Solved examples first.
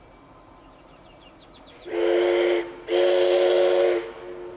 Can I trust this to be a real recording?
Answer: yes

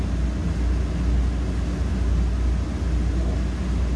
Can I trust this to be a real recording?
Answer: yes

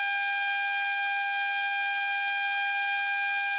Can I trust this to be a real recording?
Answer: yes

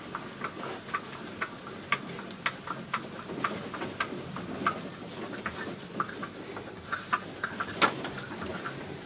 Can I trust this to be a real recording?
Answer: yes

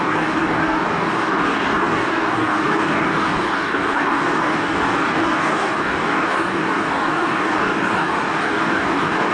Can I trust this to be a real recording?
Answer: no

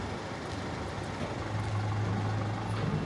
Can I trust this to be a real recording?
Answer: yes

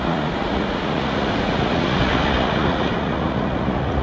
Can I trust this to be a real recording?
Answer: no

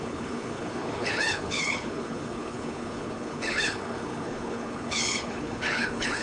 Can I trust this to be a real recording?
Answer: no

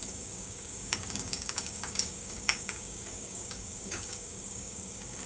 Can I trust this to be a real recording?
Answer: no